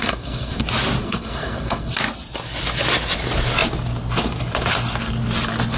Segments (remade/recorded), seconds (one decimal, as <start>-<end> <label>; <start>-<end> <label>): 0.0-0.6 remade; 0.6-1.0 recorded; 1.0-1.9 remade; 1.9-5.8 recorded